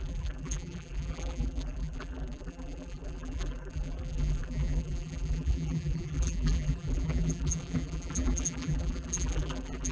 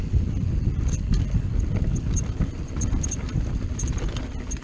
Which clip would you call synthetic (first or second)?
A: first